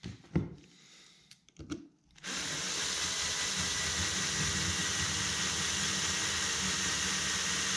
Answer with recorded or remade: recorded